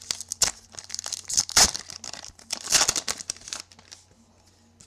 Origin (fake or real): real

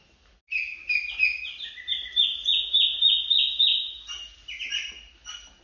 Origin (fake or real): real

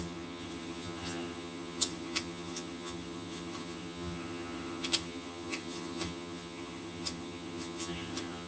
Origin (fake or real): fake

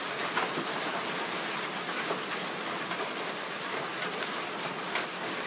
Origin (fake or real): real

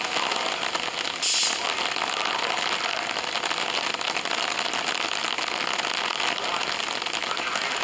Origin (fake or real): real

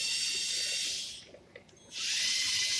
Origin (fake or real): real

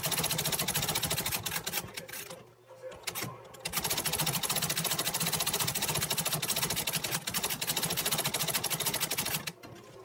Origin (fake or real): real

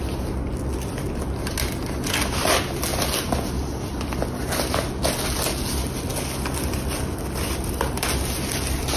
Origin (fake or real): real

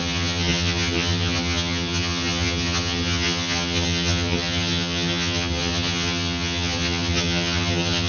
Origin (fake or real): fake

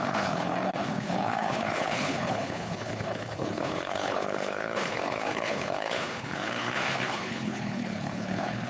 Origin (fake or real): fake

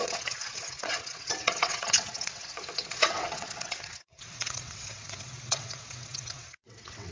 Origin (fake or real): fake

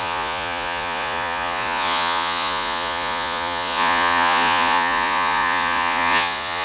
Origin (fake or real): fake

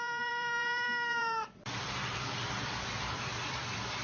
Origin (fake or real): fake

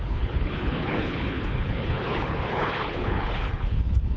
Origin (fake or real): fake